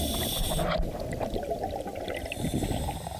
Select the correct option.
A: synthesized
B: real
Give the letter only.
B